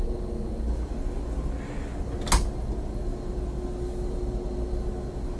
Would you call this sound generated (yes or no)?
no